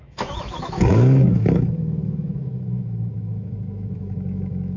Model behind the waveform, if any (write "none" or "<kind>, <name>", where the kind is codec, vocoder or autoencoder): autoencoder, DAC-VAE